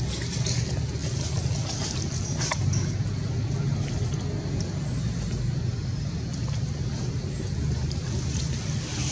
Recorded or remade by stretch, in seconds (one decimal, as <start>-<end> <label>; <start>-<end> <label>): 0.0-9.1 recorded